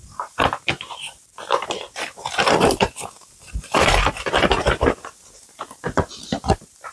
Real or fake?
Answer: fake